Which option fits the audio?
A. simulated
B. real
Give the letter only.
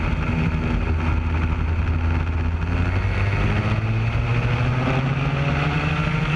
B